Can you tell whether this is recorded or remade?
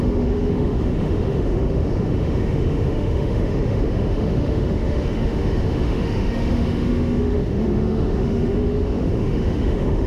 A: remade